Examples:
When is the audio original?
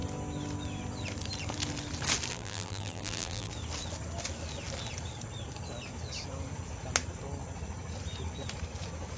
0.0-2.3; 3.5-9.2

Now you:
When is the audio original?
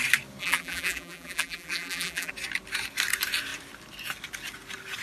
0.0-0.4; 2.3-5.0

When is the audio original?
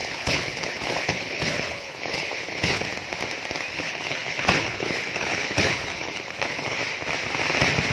2.9-3.7; 6.8-7.9